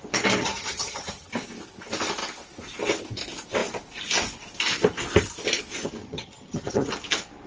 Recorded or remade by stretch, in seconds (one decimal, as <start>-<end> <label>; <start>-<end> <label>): 0.0-0.4 recorded; 0.4-1.3 remade; 1.3-6.0 recorded; 6.0-6.9 remade; 6.9-7.5 recorded